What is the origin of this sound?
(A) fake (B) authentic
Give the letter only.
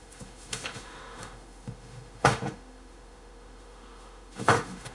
A